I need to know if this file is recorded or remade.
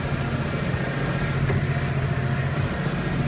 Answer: recorded